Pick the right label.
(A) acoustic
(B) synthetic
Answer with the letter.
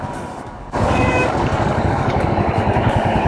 B